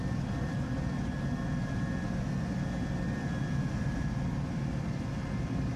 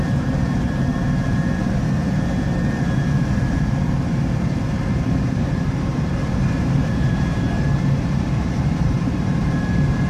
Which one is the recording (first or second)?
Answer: first